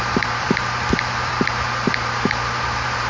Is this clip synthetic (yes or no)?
yes